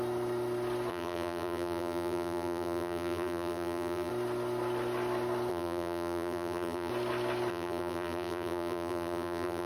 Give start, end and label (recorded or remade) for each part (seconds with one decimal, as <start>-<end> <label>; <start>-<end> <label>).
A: 0.0-0.9 recorded; 0.9-4.1 remade; 4.1-5.5 recorded; 5.5-6.9 remade; 6.9-7.5 recorded; 7.5-9.7 remade